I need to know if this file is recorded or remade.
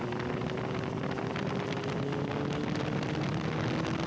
recorded